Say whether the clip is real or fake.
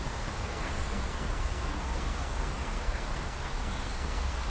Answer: fake